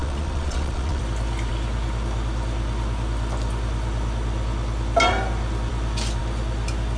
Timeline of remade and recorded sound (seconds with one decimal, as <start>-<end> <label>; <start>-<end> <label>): 0.0-1.0 remade; 1.0-7.0 recorded